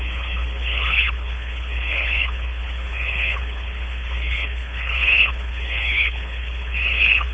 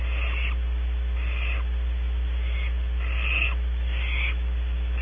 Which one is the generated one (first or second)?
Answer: first